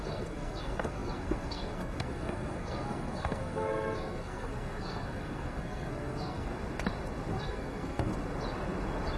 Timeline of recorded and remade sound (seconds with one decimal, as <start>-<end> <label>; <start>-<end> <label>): 0.0-6.5 remade; 6.5-7.4 recorded; 7.4-8.1 remade; 8.1-9.2 recorded